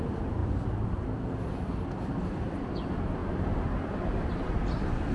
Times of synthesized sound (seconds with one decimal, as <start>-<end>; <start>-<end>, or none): 0.0-3.2; 3.8-5.1